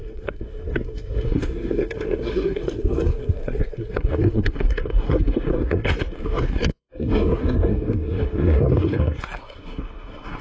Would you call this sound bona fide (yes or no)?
no